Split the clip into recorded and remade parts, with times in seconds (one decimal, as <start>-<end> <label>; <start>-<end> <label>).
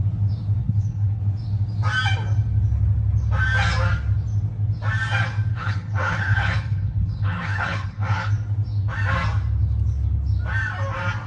0.0-0.6 recorded; 0.6-1.2 remade; 1.2-5.5 recorded; 5.5-8.3 remade; 8.3-11.3 recorded